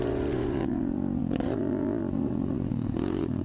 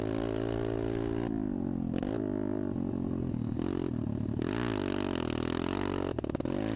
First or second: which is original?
second